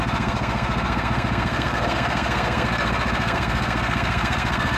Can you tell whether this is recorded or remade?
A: remade